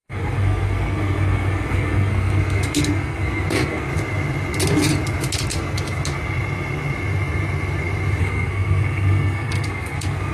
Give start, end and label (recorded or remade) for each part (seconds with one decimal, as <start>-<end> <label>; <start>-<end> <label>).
0.0-3.9 remade; 3.9-8.2 recorded; 8.2-10.3 remade